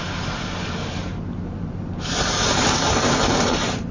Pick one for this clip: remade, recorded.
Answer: remade